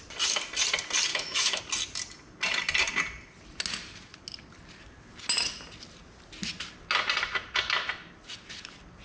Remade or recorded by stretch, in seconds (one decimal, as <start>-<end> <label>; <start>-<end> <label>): 0.0-1.1 recorded; 1.1-1.6 remade; 1.6-9.0 recorded